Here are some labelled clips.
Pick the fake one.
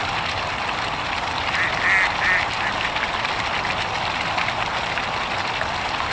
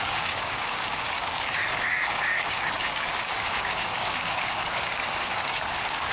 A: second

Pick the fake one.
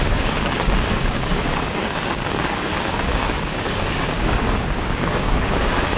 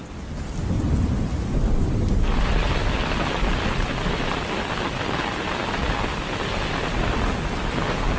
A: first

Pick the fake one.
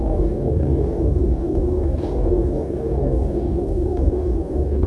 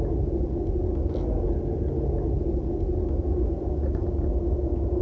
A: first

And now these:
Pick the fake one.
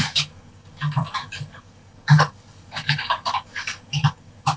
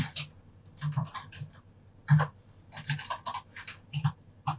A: first